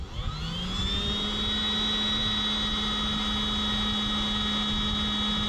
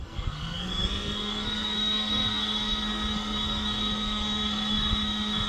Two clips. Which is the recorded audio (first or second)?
first